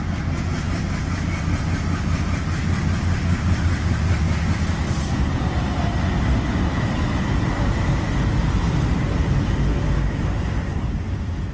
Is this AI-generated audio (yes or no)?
no